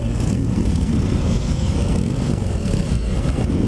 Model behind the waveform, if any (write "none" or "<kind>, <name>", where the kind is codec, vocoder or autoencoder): codec, SNAC